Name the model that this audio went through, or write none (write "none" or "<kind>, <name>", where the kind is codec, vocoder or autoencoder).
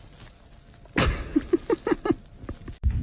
none